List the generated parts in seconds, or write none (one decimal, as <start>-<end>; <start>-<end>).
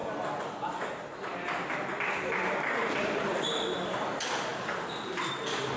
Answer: none